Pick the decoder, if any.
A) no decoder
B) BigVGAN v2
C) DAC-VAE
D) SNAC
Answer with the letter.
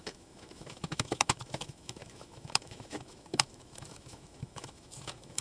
C